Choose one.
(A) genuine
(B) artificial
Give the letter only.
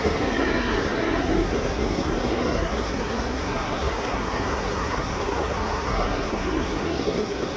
B